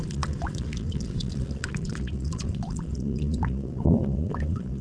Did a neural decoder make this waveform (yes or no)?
yes